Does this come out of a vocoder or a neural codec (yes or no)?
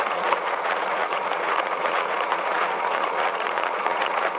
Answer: yes